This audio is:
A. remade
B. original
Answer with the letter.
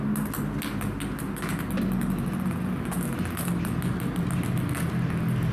B